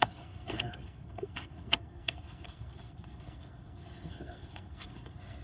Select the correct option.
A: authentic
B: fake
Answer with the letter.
B